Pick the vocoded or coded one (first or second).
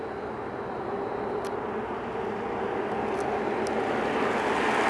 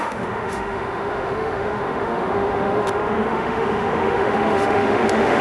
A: second